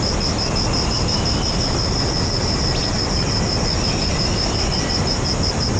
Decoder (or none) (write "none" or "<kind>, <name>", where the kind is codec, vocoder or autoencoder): none